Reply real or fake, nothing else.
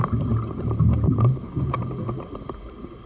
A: real